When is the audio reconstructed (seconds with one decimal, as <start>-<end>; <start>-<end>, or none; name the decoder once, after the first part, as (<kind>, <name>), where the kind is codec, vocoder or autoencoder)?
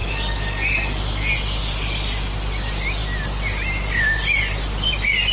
0.0-1.3 (codec, DAC)